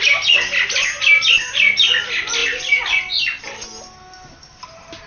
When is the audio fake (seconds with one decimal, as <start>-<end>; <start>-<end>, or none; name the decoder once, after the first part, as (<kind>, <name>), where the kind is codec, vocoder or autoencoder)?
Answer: none